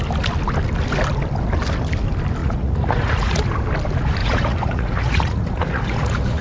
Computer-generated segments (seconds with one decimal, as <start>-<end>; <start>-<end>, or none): 2.4-3.6; 4.2-6.4